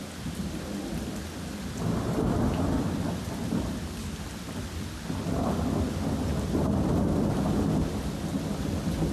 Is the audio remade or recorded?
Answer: recorded